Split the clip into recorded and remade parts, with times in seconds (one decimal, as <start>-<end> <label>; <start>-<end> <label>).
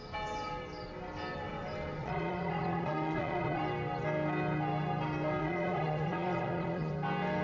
0.0-2.0 recorded; 2.0-3.6 remade; 3.6-5.4 recorded; 5.4-6.9 remade; 6.9-7.4 recorded